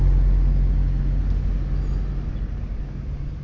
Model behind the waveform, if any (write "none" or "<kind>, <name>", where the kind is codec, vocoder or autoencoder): none